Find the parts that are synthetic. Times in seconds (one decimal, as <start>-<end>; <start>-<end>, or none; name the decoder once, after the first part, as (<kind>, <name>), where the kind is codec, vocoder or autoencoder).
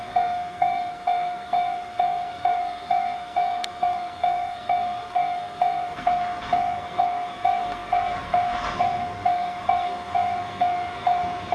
0.0-11.5 (codec, SNAC)